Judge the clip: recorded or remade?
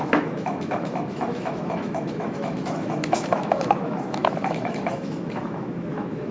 remade